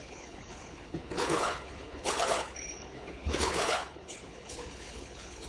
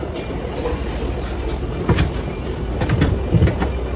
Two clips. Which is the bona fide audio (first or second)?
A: second